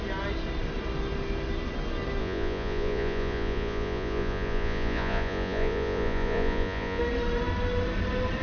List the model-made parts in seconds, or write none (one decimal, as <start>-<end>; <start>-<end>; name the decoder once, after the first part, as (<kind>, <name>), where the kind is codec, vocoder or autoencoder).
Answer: 2.2-7.0 (vocoder, Vocos)